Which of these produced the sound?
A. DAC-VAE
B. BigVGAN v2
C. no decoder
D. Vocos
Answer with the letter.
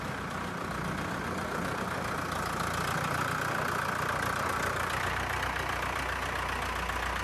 C